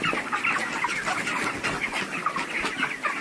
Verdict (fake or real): real